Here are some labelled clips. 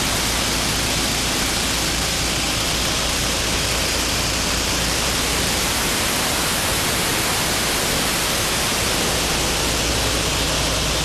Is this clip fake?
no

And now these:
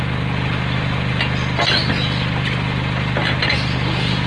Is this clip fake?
no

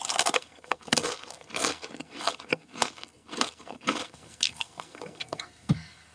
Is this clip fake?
yes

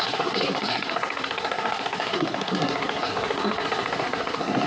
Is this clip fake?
yes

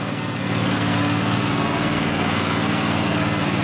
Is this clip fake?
yes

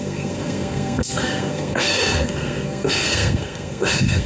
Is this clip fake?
yes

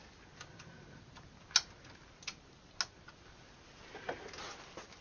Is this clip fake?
no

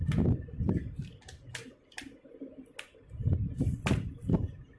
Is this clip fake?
no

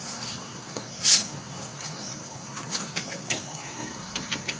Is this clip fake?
yes